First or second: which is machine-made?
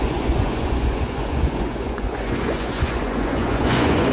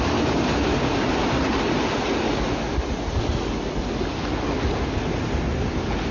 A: first